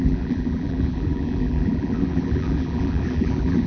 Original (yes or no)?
no